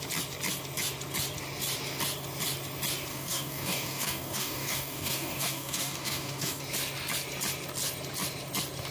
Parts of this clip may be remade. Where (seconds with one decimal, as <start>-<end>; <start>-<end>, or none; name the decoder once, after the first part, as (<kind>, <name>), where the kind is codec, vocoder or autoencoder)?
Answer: 3.1-6.6 (codec, DAC)